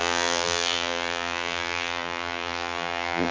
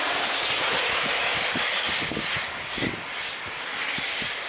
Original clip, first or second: second